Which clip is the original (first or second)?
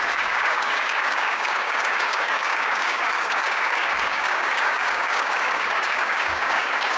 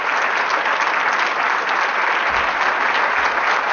second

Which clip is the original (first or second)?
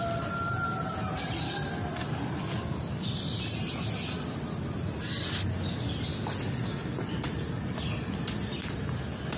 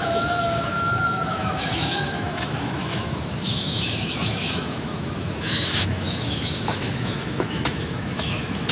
first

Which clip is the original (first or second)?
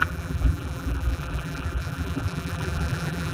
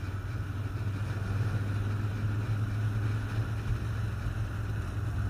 second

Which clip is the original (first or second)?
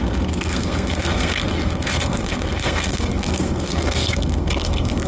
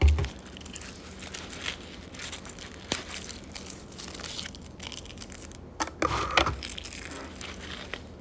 second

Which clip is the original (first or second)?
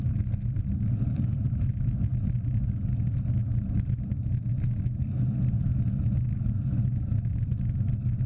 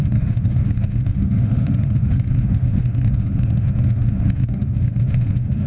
first